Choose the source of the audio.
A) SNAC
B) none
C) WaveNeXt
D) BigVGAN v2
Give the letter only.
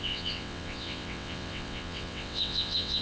C